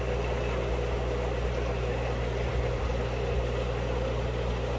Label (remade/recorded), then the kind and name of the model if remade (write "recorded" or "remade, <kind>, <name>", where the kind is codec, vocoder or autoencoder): recorded